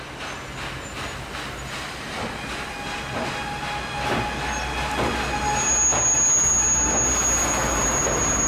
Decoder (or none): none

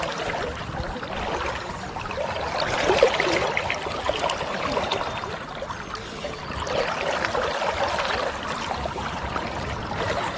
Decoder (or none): none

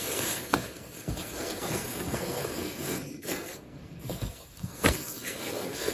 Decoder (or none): codec, SNAC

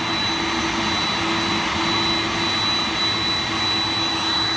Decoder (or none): none